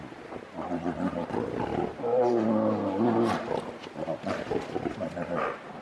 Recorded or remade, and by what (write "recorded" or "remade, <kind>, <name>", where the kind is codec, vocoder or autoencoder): recorded